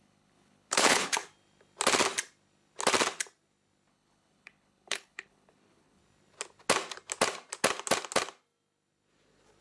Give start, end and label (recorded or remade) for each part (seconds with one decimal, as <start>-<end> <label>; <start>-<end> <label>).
0.0-1.2 remade; 1.2-3.9 recorded; 3.9-6.0 remade; 6.0-9.6 recorded